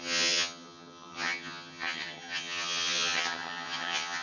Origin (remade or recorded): remade